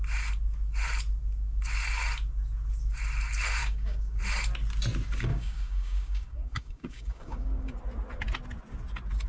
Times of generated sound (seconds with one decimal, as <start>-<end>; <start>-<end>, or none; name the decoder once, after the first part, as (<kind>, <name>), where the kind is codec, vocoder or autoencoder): 3.6-4.2 (codec, DAC); 5.3-7.7